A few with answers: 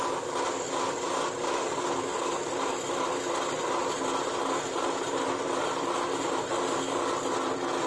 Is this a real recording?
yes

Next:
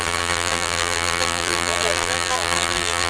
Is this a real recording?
no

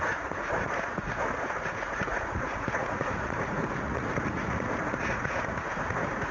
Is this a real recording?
no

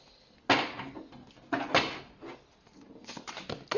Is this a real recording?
yes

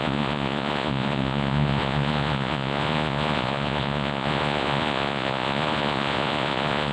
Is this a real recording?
no